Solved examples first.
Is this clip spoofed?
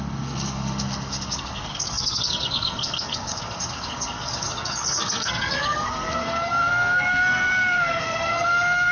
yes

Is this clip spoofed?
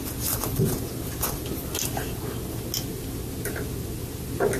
no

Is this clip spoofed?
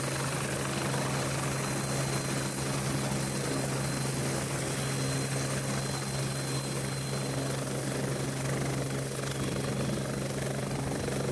no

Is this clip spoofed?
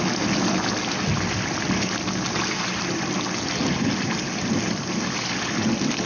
no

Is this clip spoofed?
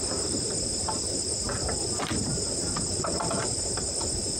yes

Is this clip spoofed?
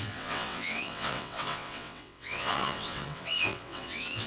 yes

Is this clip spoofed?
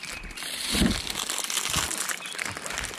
no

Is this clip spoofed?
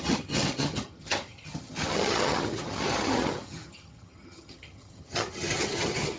yes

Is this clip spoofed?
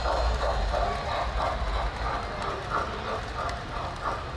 no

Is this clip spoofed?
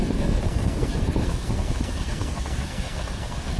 yes